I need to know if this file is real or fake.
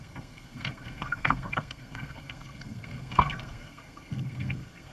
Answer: fake